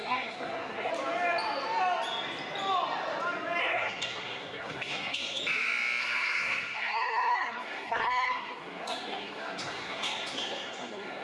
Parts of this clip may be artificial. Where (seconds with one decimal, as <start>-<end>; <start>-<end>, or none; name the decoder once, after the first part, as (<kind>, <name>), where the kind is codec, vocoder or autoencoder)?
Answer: 0.0-0.9 (codec, SNAC); 3.6-5.4; 6.0-11.2